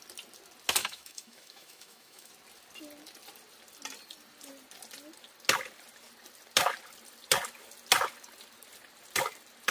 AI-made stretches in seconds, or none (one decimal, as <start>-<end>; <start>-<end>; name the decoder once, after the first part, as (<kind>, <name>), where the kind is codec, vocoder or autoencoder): 0.8-2.3 (autoencoder, DAC-VAE)